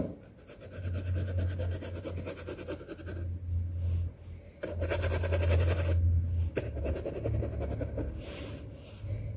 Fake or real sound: real